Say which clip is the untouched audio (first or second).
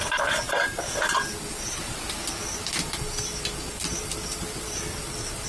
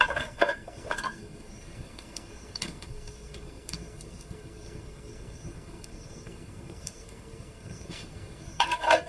first